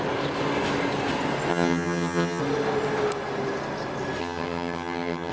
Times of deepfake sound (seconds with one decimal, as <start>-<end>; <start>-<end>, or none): 1.5-2.4; 4.2-5.3